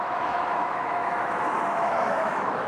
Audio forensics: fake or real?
fake